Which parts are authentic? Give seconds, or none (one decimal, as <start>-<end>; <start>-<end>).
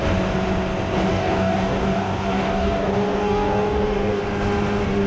0.0-1.1; 4.2-5.1